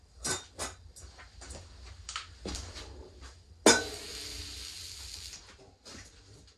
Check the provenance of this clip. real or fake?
real